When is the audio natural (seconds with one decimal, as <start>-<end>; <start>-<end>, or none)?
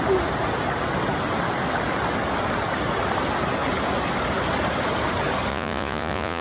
0.0-5.5